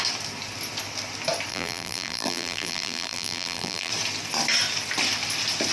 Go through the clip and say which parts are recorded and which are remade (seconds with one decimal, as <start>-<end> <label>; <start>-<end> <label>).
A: 0.0-1.5 recorded; 1.5-3.9 remade; 3.9-5.7 recorded